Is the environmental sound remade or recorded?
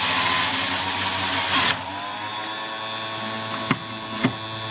recorded